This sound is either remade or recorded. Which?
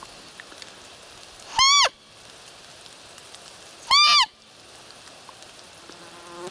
recorded